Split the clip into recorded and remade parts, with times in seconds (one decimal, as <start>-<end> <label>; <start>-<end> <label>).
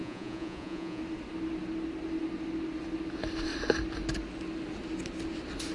0.0-1.0 remade; 1.0-5.7 recorded